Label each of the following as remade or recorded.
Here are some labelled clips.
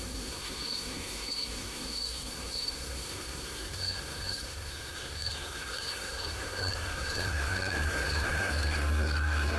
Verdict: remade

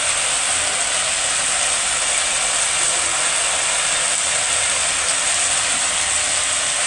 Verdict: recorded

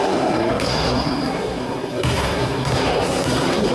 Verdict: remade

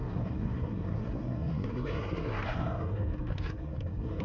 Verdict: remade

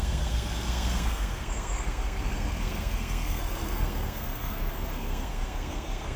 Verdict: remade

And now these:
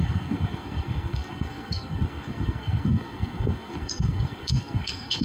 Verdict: remade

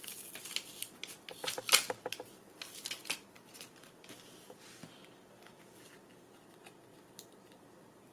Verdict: recorded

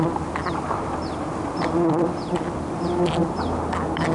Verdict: recorded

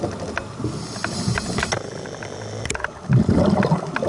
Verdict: recorded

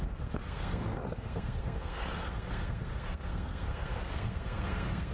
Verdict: remade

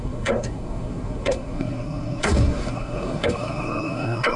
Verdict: remade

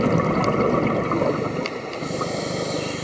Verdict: recorded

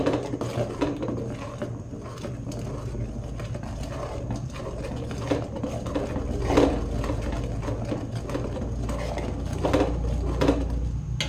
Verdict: recorded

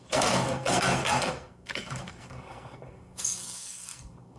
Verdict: remade